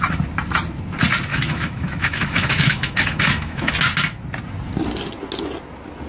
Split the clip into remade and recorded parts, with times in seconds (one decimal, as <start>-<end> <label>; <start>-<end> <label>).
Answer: 0.0-1.3 recorded; 1.3-3.7 remade; 3.7-6.1 recorded